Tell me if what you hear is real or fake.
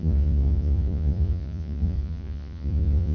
fake